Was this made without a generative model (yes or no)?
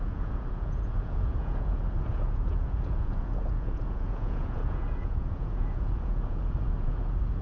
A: no